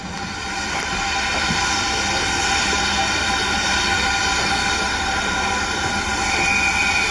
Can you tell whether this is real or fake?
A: real